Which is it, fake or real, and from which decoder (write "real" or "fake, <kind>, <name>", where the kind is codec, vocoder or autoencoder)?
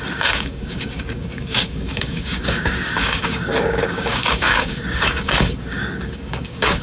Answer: fake, codec, DAC